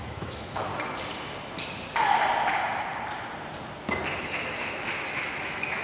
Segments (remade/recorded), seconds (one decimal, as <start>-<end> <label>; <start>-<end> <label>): 0.0-0.7 remade; 0.7-4.2 recorded; 4.2-5.8 remade